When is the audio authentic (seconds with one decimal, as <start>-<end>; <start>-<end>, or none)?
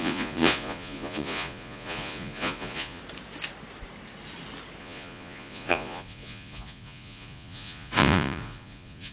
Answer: 3.0-4.8